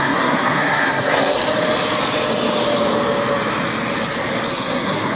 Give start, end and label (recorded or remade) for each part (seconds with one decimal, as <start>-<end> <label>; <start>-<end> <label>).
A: 0.0-1.4 remade; 1.4-4.5 recorded; 4.5-5.2 remade